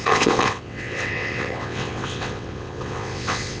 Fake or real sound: fake